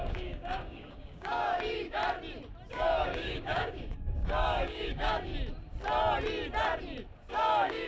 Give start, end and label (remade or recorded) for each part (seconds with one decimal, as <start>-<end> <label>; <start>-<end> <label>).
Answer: 0.0-2.0 remade; 2.0-2.7 recorded; 2.7-5.3 remade; 5.3-7.3 recorded; 7.3-7.9 remade